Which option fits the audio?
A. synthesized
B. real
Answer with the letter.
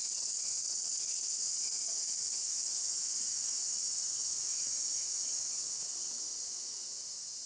A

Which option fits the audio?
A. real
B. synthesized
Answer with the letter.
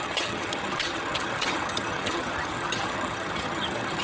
B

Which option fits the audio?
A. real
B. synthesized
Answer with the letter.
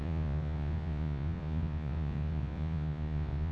B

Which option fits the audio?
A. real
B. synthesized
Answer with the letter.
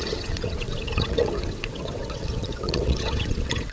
B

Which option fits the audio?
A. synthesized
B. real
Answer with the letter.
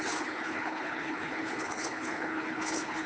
A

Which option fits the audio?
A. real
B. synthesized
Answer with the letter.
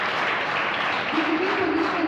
B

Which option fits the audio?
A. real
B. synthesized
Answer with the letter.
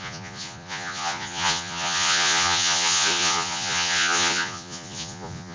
B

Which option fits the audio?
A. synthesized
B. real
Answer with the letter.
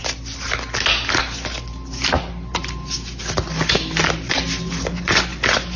B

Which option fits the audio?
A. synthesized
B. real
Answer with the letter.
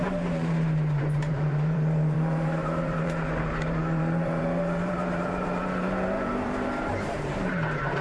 A